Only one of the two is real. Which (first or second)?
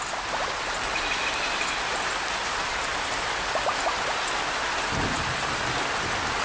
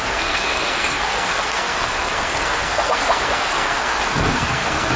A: first